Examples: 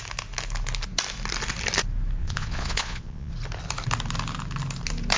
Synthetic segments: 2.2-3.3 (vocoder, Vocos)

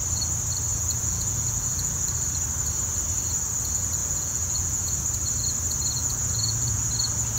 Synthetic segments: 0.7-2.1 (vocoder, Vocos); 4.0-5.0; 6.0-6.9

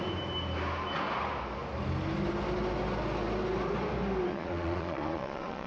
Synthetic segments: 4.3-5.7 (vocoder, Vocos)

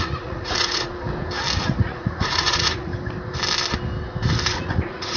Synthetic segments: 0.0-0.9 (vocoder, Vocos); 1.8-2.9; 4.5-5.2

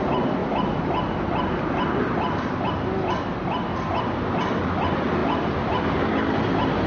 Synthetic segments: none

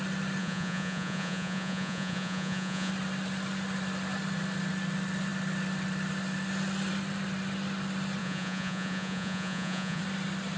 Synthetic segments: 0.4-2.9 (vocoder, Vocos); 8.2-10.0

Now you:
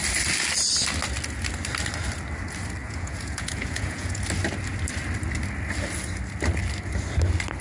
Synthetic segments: 2.8-4.2 (vocoder, Vocos)